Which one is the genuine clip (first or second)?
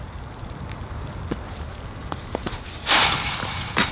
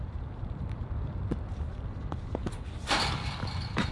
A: first